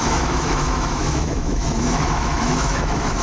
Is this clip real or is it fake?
fake